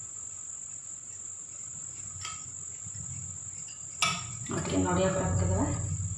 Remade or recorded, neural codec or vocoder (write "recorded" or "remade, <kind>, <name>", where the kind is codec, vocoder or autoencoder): recorded